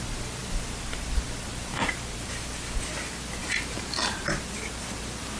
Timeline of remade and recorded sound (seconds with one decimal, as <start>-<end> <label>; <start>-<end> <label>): 0.0-3.4 recorded; 3.4-4.4 remade; 4.4-5.4 recorded